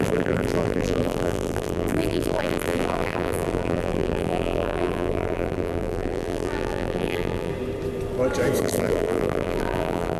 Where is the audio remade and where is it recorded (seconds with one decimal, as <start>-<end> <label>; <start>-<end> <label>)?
0.0-7.5 remade; 7.5-8.6 recorded; 8.6-10.2 remade